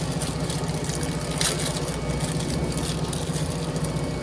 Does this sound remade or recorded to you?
recorded